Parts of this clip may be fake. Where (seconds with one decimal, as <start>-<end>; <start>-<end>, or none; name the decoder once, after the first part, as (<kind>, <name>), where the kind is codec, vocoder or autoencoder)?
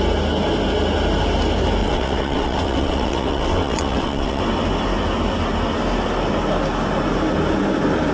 1.8-4.4 (vocoder, WaveNeXt)